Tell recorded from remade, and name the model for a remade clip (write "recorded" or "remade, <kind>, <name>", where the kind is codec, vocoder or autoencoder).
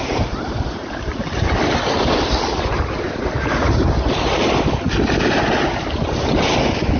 recorded